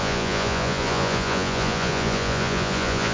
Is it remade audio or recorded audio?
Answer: remade